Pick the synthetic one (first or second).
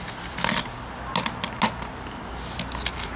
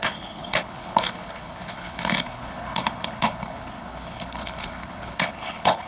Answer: second